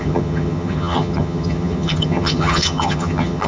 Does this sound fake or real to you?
fake